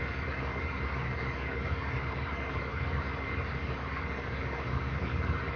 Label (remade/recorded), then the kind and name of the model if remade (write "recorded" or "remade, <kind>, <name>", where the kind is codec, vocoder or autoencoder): remade, codec, DAC